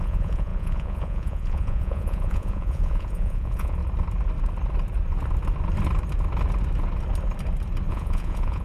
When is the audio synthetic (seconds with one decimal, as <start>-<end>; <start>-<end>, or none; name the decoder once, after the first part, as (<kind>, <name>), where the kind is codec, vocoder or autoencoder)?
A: 0.0-3.8 (vocoder, Vocos); 7.9-8.6